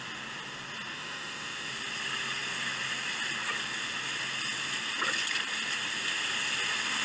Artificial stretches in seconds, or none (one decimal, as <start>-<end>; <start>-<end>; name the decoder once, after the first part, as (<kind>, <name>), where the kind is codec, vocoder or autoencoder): 0.9-1.7 (autoencoder, DAC-VAE)